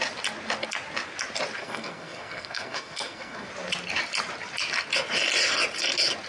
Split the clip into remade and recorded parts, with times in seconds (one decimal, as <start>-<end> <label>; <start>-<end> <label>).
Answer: 0.0-1.6 recorded; 1.6-3.5 remade; 3.5-6.3 recorded